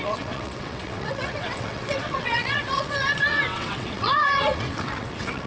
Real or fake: fake